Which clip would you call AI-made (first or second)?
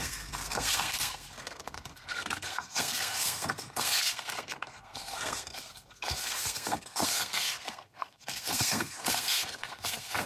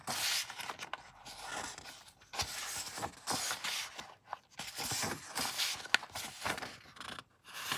first